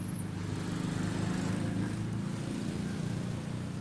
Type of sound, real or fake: real